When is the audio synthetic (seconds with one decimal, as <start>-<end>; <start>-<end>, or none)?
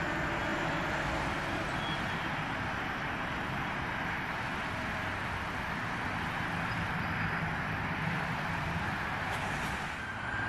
none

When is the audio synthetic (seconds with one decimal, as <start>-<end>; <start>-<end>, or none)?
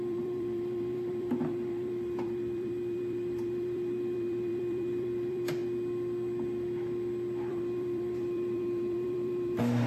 0.0-5.6; 7.5-9.9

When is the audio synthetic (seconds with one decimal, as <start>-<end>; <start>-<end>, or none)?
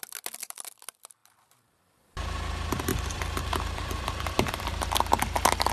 1.2-2.5; 2.9-4.6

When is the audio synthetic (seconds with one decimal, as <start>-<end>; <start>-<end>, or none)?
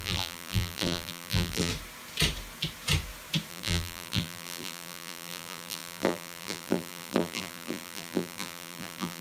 0.0-1.7; 3.5-9.2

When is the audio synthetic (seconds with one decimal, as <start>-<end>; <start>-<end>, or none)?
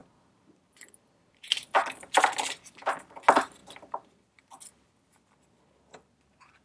0.0-1.7; 3.6-4.5